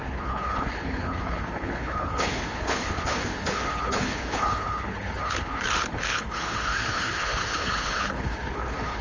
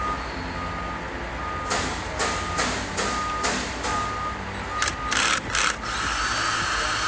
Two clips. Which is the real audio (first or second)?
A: second